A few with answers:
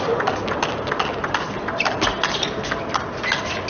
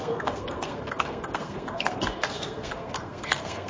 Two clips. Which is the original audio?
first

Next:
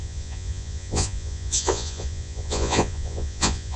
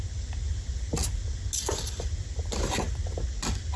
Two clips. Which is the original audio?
second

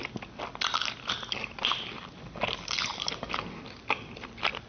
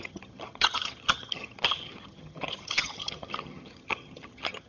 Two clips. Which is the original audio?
first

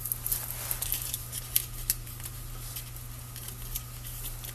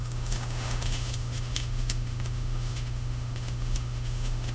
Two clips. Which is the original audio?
first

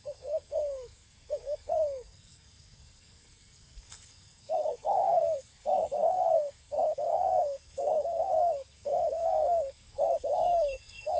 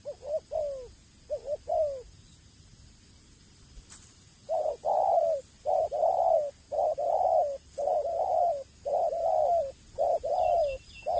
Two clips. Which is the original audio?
second